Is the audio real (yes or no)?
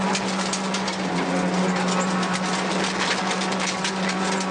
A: yes